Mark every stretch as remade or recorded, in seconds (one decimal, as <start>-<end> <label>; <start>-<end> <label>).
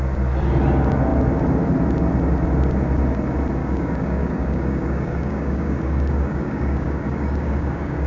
0.0-3.6 recorded; 3.6-8.1 remade